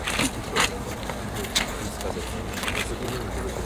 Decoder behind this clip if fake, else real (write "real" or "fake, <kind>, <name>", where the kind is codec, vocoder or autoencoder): real